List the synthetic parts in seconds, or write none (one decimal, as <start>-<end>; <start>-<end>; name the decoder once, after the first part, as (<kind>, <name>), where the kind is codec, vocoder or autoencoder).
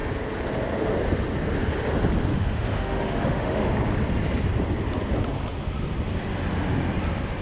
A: 2.3-3.7 (autoencoder, DAC-VAE)